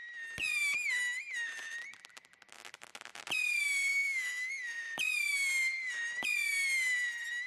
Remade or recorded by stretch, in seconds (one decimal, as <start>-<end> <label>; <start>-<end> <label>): 0.0-3.9 recorded; 3.9-4.5 remade; 4.5-7.5 recorded